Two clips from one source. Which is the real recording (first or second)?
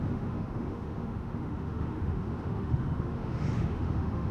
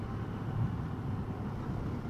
second